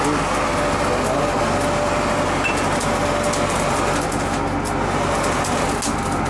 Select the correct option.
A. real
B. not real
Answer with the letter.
A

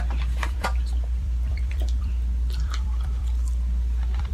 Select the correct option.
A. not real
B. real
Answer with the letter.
A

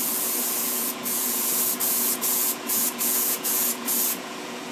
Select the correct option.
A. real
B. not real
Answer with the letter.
B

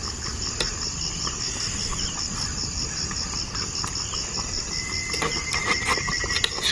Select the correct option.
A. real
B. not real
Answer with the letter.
A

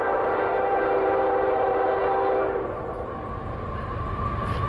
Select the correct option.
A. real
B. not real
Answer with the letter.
B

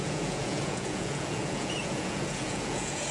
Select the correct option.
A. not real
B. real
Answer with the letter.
A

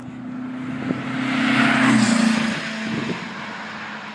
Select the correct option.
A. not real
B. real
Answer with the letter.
B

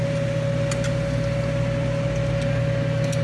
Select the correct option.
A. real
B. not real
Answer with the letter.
A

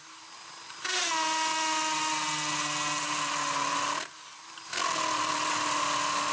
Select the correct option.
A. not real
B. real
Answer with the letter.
B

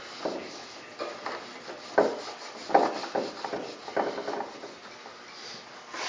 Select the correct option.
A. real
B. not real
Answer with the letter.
A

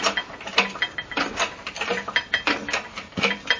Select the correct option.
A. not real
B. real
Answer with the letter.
A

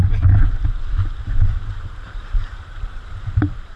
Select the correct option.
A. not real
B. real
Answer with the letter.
A